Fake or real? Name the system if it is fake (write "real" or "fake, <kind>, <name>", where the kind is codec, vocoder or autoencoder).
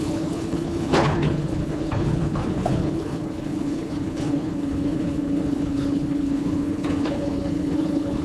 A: fake, codec, HILCodec